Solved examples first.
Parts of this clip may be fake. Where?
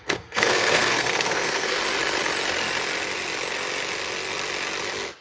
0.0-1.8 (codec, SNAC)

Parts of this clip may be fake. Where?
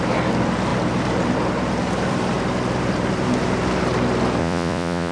4.4-5.1 (vocoder, Vocos)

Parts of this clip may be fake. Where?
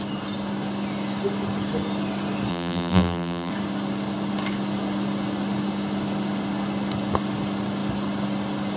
2.5-3.5 (vocoder, BigVGAN v2)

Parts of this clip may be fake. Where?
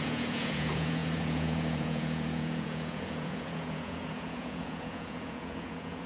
0.0-6.1 (vocoder, Vocos)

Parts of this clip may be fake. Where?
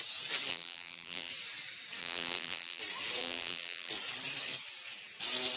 0.5-1.3 (vocoder, BigVGAN v2); 2.0-2.8; 3.2-3.9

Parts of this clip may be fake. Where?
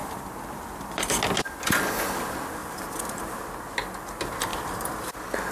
2.6-3.2 (vocoder, BigVGAN v2); 4.5-5.1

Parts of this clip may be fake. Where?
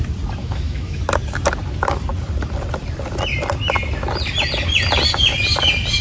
0.4-1.0 (autoencoder, DAC-VAE)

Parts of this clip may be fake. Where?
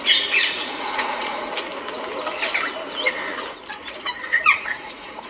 0.0-1.7 (vocoder, Vocos); 3.7-5.3